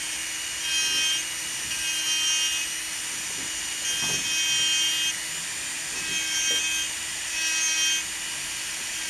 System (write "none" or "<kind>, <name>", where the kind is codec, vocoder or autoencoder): none